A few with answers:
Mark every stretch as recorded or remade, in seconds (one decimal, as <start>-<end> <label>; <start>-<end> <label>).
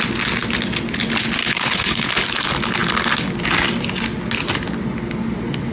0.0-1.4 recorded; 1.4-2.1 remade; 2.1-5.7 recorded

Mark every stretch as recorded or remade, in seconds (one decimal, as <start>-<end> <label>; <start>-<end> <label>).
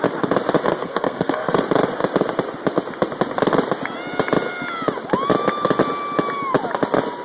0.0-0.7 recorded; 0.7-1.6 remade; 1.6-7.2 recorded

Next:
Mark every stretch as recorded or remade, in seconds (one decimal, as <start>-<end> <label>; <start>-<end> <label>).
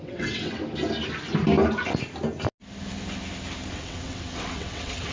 0.0-0.6 remade; 0.6-3.7 recorded; 3.7-5.1 remade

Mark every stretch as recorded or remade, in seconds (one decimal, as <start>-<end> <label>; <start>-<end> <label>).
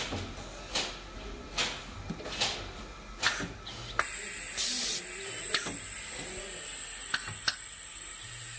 0.0-8.6 recorded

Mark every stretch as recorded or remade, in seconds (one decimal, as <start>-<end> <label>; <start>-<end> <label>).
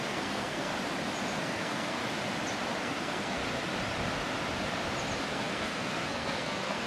0.0-0.7 remade; 0.7-1.4 recorded; 1.4-2.0 remade; 2.0-2.8 recorded; 2.8-3.4 remade; 3.4-5.3 recorded; 5.3-6.9 remade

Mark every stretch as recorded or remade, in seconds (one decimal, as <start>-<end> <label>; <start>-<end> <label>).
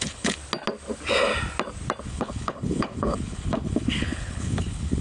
0.0-0.4 remade; 0.4-2.1 recorded; 2.1-5.0 remade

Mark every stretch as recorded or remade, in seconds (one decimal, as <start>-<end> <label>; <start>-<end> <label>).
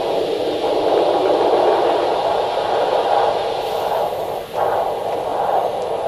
0.0-6.1 recorded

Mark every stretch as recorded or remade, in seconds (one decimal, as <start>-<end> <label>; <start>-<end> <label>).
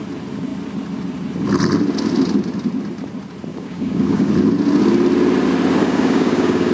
0.0-3.5 recorded; 3.5-4.3 remade; 4.3-5.8 recorded; 5.8-6.7 remade